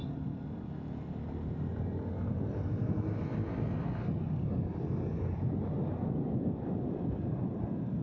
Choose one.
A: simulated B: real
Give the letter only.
B